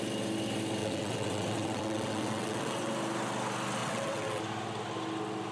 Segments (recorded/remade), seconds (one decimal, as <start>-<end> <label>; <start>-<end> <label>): 0.0-0.8 recorded; 0.8-2.9 remade; 2.9-3.8 recorded; 3.8-4.4 remade; 4.4-5.5 recorded